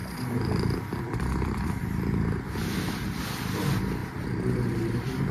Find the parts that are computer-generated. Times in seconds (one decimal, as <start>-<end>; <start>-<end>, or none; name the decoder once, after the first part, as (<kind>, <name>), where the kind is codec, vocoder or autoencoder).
0.0-3.2 (vocoder, BigVGAN v2)